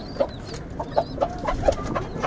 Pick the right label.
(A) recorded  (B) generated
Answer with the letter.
A